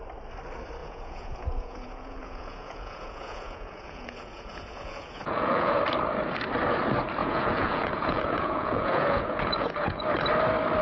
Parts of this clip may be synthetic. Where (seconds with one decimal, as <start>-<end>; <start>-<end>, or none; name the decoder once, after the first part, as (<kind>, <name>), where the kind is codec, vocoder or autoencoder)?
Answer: 0.8-5.8 (vocoder, Vocos); 7.2-10.0